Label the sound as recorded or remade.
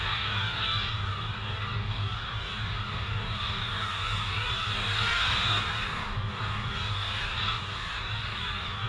remade